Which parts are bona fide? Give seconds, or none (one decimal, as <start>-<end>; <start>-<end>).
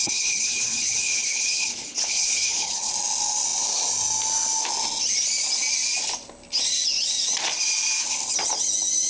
2.9-9.1